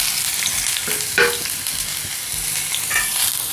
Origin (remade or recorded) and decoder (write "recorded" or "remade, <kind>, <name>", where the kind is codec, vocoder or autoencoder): recorded